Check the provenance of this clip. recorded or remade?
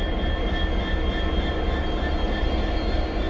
recorded